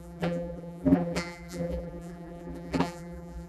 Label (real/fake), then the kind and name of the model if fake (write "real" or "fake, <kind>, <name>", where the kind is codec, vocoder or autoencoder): fake, vocoder, BigVGAN v2